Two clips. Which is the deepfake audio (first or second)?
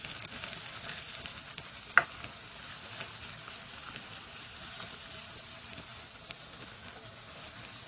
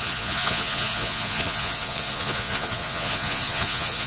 second